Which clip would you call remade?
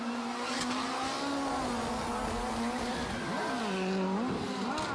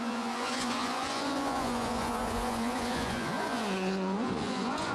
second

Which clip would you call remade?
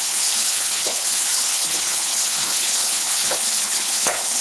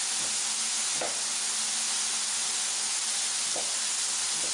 first